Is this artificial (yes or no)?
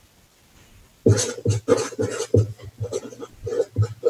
no